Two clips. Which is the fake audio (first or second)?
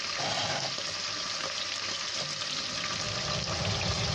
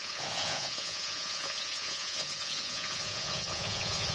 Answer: second